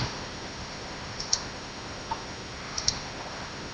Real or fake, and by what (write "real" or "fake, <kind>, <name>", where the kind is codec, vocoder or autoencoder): fake, autoencoder, DAC-VAE